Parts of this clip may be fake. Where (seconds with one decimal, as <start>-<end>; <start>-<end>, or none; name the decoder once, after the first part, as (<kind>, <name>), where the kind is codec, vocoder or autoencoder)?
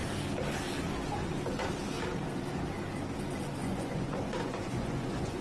3.6-5.4 (vocoder, Vocos)